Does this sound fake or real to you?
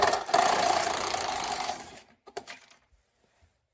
fake